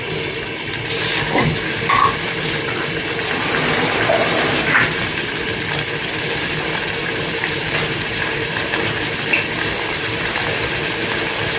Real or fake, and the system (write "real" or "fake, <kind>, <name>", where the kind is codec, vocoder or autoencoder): fake, vocoder, BigVGAN v2